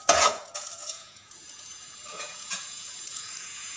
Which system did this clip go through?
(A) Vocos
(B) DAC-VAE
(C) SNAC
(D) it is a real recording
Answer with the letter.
A